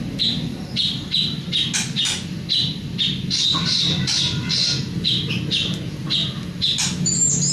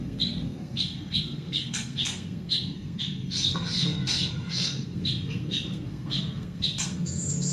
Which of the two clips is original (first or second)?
first